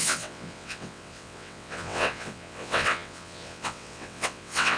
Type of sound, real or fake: fake